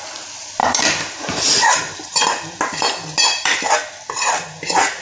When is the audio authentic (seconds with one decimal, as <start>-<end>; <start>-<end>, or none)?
0.0-0.6; 3.6-5.0